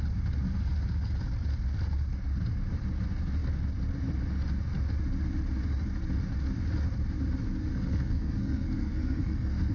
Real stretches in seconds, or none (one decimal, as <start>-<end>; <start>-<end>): 0.0-7.7